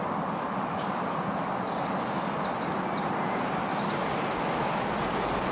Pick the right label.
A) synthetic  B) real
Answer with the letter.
B